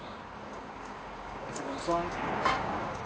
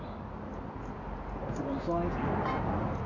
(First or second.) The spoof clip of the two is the first